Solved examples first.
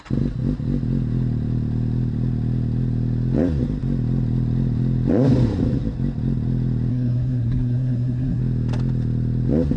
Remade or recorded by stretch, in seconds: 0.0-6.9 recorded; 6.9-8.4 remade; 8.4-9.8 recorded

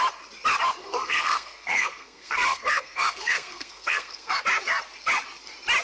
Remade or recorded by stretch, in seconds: 0.0-0.8 recorded; 0.8-4.3 remade; 4.3-5.8 recorded

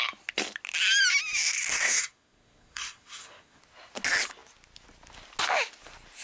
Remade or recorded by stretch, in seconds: 0.0-1.7 recorded; 1.7-3.6 remade; 3.6-6.2 recorded

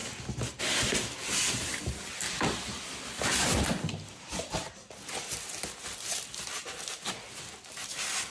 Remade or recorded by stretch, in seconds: 0.0-8.3 recorded

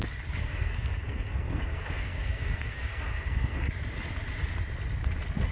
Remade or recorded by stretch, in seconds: 0.0-0.4 recorded; 0.4-3.7 remade; 3.7-5.5 recorded

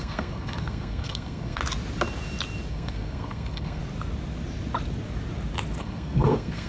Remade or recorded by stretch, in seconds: 0.0-1.6 remade; 1.6-2.7 recorded; 2.7-3.8 remade; 3.8-5.8 recorded; 5.8-6.7 remade